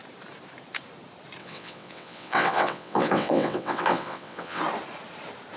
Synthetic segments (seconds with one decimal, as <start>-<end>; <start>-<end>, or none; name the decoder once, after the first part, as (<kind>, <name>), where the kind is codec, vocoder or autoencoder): 1.4-4.6 (vocoder, WaveNeXt)